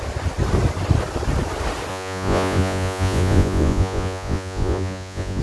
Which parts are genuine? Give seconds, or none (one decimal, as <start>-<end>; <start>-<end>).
0.0-1.9